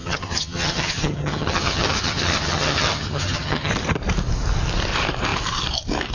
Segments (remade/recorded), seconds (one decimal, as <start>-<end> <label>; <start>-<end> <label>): 0.0-3.7 remade; 3.7-6.1 recorded